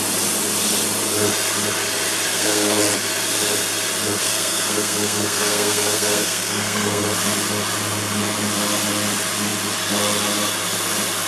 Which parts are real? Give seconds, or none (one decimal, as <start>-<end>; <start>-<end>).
0.0-2.3; 2.8-4.2; 7.0-11.3